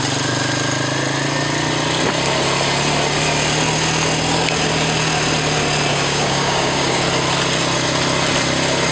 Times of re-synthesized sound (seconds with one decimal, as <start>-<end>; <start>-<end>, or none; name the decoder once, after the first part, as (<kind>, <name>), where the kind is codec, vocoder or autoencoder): 5.9-7.0 (codec, DAC)